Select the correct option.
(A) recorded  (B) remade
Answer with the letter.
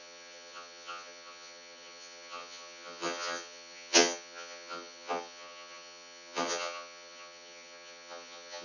B